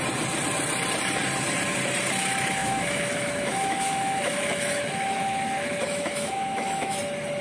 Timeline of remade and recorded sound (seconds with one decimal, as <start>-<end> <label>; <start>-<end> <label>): 0.0-2.6 recorded; 2.6-7.0 remade; 7.0-7.4 recorded